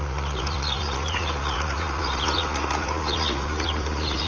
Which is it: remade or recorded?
remade